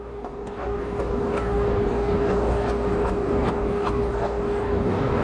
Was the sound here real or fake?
fake